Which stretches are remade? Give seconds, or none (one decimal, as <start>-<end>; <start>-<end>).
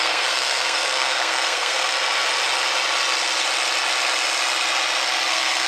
0.0-1.9; 5.3-5.7